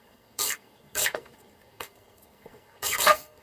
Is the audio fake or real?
fake